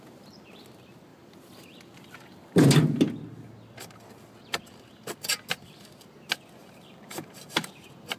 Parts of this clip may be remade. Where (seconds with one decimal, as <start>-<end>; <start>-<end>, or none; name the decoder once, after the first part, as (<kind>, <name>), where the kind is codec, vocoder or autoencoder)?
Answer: 6.6-7.7 (vocoder, BigVGAN v2)